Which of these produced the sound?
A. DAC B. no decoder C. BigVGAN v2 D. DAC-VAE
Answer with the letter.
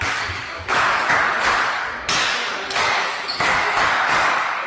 A